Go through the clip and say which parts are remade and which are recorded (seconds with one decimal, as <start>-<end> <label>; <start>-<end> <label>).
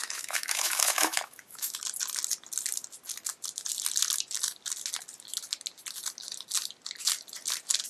0.0-1.8 remade; 1.8-7.9 recorded